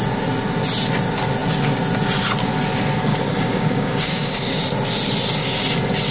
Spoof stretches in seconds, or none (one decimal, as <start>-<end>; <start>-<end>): 3.1-4.6